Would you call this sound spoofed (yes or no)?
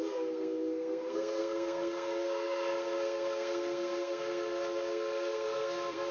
yes